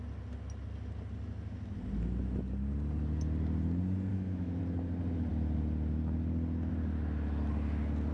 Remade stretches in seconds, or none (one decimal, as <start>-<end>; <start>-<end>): 4.1-4.6